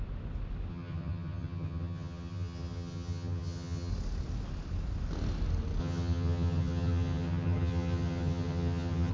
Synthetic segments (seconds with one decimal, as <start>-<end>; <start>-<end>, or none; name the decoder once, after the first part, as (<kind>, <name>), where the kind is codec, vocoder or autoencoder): 0.7-3.9 (vocoder, HiFi-GAN); 5.8-9.1